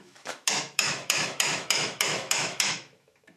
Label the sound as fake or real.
fake